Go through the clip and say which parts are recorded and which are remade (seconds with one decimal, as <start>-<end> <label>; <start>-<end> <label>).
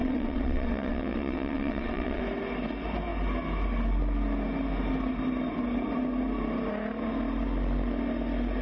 0.0-2.2 remade; 2.2-8.6 recorded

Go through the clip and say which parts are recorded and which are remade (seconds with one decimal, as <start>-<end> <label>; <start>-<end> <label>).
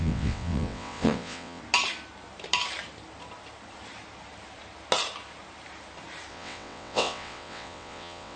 0.0-1.6 remade; 1.6-6.3 recorded; 6.3-8.4 remade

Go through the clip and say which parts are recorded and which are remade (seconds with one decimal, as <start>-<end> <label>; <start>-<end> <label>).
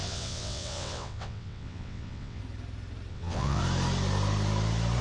0.0-2.4 remade; 2.4-3.1 recorded; 3.1-3.6 remade; 3.6-5.0 recorded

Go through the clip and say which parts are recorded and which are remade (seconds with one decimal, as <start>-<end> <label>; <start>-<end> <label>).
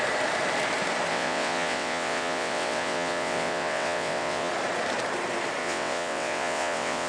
0.0-1.1 recorded; 1.1-4.5 remade; 4.5-5.6 recorded; 5.6-7.1 remade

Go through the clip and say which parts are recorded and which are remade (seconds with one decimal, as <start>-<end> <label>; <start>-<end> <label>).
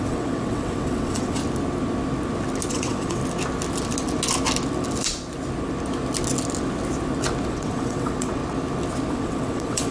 0.0-1.4 remade; 1.4-2.7 recorded; 2.7-3.2 remade; 3.2-7.5 recorded; 7.5-8.4 remade; 8.4-9.1 recorded; 9.1-9.9 remade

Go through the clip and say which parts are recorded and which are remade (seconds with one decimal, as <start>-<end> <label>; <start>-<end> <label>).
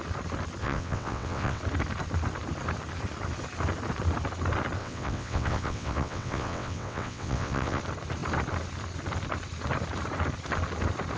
0.0-0.6 recorded; 0.6-1.6 remade; 1.6-4.8 recorded; 4.8-7.8 remade; 7.8-11.2 recorded